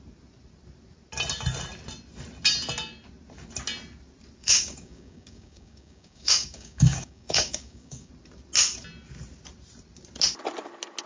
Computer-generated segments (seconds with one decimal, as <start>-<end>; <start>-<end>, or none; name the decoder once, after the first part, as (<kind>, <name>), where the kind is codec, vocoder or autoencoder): 4.4-8.1 (codec, DAC)